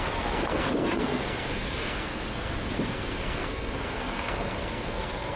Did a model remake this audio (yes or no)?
yes